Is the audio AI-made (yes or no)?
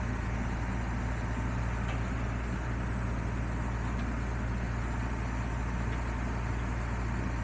no